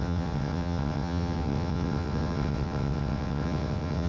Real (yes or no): no